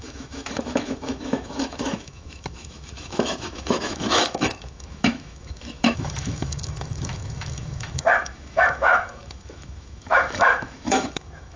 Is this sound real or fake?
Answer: fake